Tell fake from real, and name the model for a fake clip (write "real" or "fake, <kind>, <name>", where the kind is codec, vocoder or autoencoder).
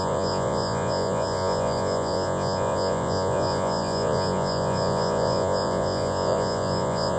fake, vocoder, Vocos